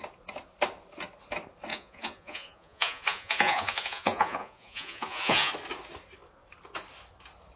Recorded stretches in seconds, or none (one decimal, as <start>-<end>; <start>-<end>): 0.0-1.7; 5.5-7.6